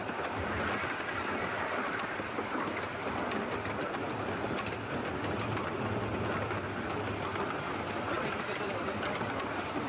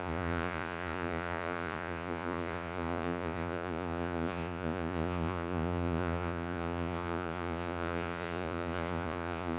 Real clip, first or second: first